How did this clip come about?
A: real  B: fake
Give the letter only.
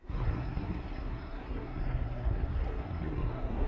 B